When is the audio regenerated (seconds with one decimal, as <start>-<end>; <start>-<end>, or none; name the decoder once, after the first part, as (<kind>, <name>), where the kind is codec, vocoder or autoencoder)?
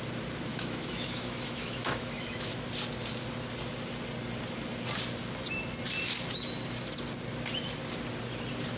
0.5-2.5 (autoencoder, DAC-VAE)